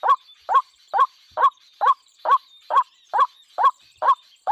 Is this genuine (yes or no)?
no